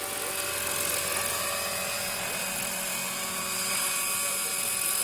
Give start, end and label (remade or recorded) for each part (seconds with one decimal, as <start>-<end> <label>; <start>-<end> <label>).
0.0-5.0 recorded

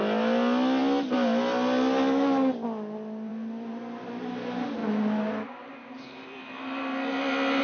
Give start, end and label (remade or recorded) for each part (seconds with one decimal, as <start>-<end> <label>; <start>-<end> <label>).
0.0-7.6 recorded

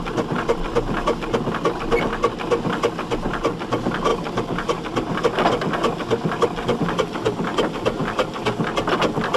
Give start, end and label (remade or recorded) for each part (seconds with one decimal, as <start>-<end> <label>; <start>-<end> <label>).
0.0-9.4 recorded

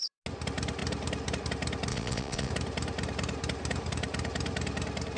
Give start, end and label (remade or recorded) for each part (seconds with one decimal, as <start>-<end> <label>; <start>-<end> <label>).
0.0-1.9 recorded; 1.9-2.5 remade; 2.5-5.2 recorded